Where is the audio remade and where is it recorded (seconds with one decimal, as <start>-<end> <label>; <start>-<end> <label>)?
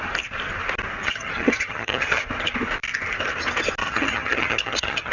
0.0-1.0 recorded; 1.0-2.2 remade; 2.2-3.8 recorded; 3.8-5.1 remade